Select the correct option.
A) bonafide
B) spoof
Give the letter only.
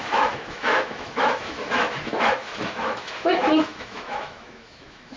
B